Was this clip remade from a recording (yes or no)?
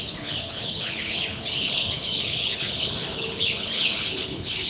yes